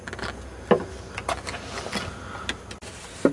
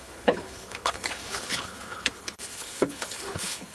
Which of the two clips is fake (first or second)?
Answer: second